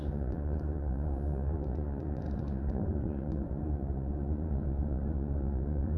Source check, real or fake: fake